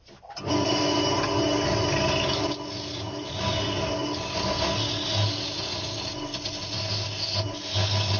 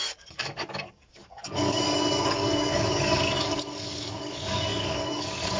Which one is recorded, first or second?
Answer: first